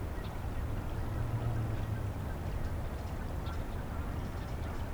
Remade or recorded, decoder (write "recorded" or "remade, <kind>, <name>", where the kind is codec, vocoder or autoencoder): recorded